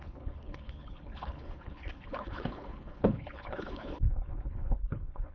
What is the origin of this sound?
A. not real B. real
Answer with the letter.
A